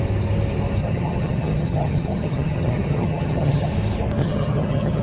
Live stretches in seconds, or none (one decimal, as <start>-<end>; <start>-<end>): 0.0-0.8; 3.7-4.2